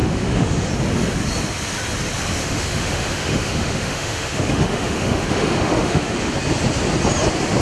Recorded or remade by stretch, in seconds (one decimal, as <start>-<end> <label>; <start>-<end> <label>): 0.0-0.7 remade; 0.7-2.4 recorded; 2.4-6.3 remade; 6.3-7.6 recorded